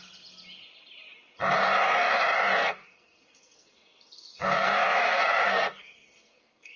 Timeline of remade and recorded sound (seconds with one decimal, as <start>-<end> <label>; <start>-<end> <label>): 0.0-2.6 recorded; 2.6-6.8 remade